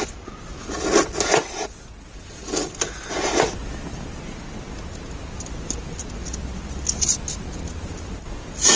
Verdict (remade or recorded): recorded